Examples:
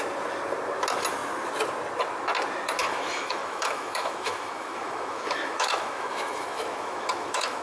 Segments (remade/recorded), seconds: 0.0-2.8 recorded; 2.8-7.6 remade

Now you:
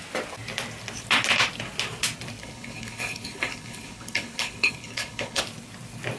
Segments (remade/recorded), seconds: 0.0-2.4 recorded; 2.4-5.4 remade; 5.4-6.2 recorded